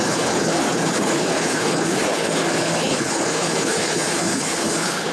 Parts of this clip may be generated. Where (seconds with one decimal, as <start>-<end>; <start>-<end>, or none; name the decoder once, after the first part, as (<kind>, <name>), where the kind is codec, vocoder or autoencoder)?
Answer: 0.0-5.1 (codec, HILCodec)